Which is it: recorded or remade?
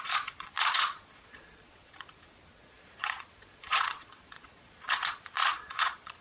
remade